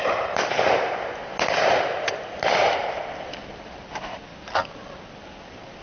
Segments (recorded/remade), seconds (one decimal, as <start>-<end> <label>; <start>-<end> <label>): 0.0-5.8 recorded